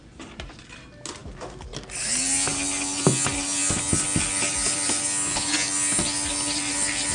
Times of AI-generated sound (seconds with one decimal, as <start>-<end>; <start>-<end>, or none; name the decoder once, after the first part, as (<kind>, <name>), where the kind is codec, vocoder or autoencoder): none